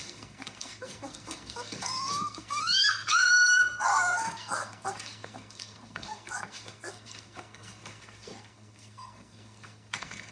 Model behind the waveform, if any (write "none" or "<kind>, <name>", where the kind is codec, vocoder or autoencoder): codec, SNAC